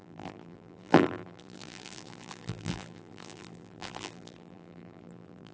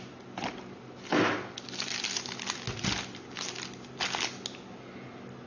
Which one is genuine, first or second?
second